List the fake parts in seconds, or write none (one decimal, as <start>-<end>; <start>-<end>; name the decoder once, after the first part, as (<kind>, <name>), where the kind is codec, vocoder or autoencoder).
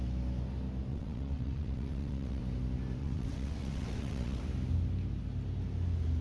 0.9-2.4 (vocoder, WaveNeXt); 3.0-4.4